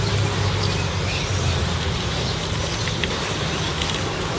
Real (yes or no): yes